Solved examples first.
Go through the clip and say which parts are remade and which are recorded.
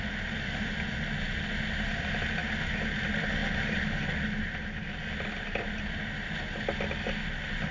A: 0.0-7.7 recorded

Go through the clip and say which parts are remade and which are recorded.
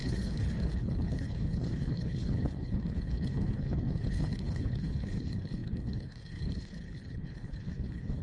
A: 0.0-8.2 remade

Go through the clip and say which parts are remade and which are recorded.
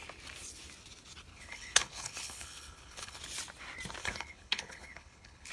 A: 0.0-1.3 recorded; 1.3-3.2 remade; 3.2-4.0 recorded; 4.0-5.5 remade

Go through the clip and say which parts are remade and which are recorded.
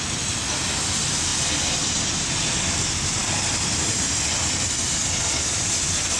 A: 0.0-6.2 recorded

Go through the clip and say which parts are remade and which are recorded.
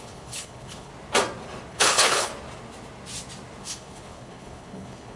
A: 0.0-0.9 remade; 0.9-1.7 recorded; 1.7-2.3 remade; 2.3-3.6 recorded; 3.6-5.2 remade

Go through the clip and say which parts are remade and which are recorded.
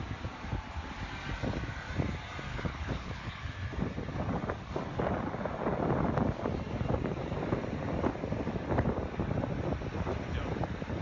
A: 0.0-2.5 recorded; 2.5-3.5 remade; 3.5-11.0 recorded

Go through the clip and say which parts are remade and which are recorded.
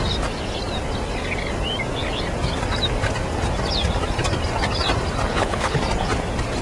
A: 0.0-5.3 recorded; 5.3-5.8 remade; 5.8-6.6 recorded